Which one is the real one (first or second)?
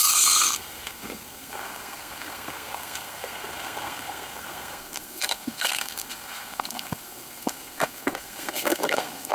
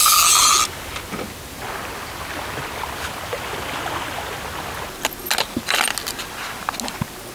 second